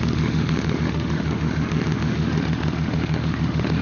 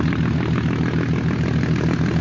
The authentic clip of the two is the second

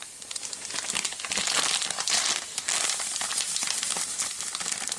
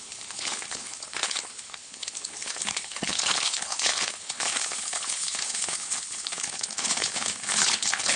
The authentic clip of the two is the first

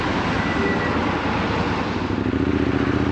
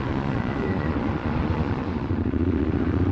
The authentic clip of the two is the first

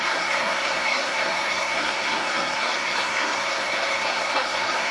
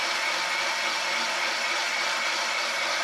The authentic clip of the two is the second